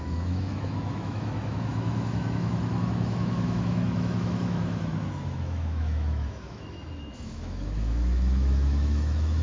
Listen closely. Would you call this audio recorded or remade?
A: remade